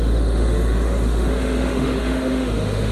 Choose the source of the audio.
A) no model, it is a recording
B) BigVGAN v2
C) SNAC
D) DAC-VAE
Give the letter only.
D